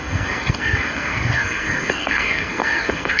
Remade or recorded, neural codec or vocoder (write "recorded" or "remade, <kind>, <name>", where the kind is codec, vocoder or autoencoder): remade, codec, SNAC